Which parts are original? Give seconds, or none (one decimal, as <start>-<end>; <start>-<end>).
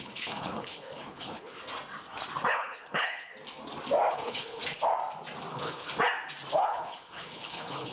1.6-2.5; 3.3-4.1; 4.6-5.5; 5.9-6.5